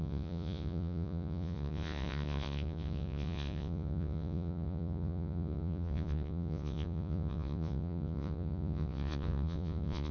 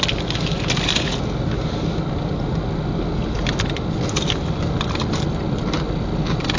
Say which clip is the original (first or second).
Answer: second